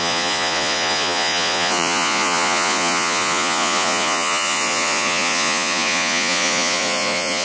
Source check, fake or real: fake